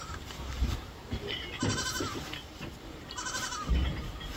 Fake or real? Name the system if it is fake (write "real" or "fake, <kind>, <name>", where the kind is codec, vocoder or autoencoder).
real